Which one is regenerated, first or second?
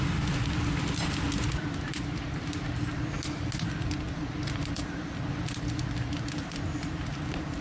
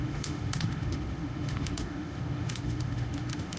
second